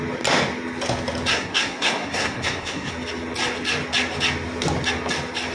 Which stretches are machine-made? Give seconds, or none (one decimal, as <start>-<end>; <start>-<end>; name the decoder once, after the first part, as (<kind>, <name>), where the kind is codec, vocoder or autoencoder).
1.3-2.9 (codec, SNAC)